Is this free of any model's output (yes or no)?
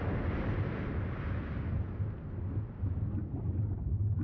yes